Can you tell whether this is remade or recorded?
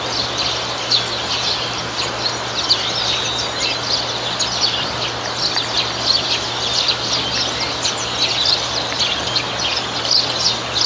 recorded